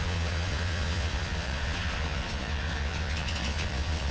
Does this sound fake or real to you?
fake